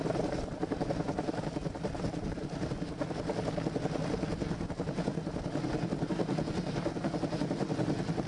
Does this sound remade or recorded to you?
recorded